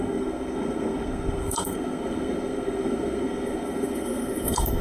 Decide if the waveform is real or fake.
fake